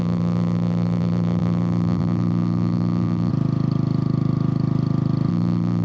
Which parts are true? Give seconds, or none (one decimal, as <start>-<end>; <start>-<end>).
3.3-5.3